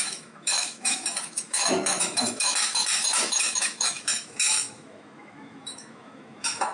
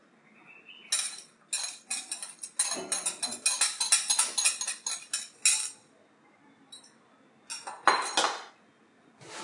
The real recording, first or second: second